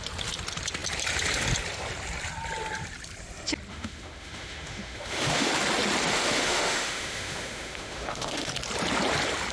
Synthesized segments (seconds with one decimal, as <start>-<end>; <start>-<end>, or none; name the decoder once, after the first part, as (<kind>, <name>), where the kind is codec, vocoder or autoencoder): 3.7-5.5 (autoencoder, DAC-VAE); 6.1-8.5